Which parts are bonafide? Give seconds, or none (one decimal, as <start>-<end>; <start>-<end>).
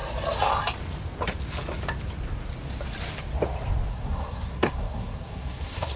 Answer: 0.0-3.9